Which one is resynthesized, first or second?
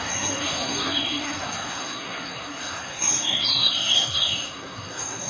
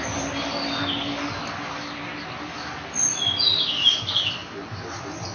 first